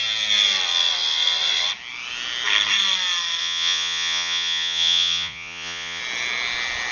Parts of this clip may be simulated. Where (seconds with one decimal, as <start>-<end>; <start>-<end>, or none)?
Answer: 3.4-6.0